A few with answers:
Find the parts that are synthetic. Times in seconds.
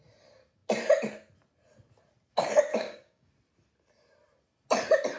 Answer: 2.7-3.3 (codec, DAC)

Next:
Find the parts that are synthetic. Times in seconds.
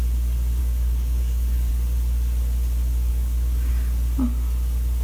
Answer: 0.6-1.7 (codec, DAC); 3.1-3.7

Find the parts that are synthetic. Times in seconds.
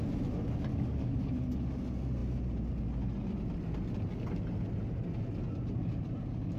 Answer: 0.7-1.3 (codec, DAC)